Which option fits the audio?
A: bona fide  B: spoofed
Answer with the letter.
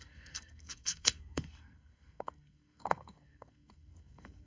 B